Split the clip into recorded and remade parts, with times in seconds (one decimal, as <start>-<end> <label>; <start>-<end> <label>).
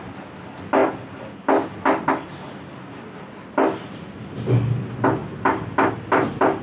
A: 0.0-6.6 recorded